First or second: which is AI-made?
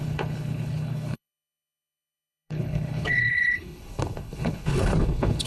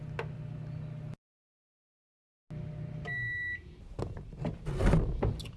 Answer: first